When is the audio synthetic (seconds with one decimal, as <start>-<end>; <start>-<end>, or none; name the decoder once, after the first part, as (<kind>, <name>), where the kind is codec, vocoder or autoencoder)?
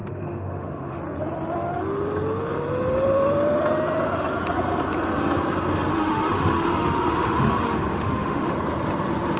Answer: 0.0-1.0 (autoencoder, DAC-VAE); 5.9-8.5